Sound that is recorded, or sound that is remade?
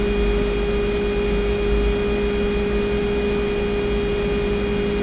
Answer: recorded